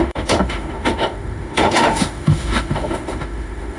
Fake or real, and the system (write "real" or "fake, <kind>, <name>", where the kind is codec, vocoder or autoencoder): fake, autoencoder, DAC-VAE